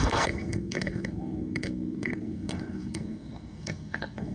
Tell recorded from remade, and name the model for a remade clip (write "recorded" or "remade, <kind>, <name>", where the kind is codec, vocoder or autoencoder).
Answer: remade, codec, SNAC